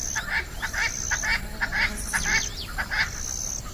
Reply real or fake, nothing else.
real